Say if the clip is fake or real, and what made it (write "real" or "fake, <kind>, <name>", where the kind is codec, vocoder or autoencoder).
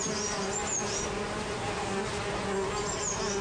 real